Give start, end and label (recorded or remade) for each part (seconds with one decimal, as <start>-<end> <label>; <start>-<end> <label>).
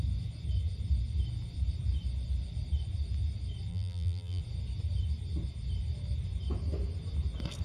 0.0-3.7 recorded; 3.7-4.4 remade; 4.4-7.6 recorded